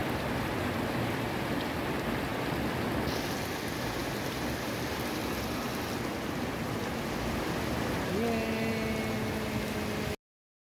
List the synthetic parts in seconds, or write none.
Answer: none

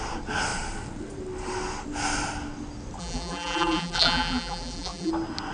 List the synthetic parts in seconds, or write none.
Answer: 3.0-5.1 (vocoder, BigVGAN v2)